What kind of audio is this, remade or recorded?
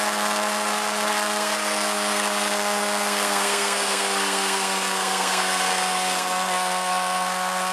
remade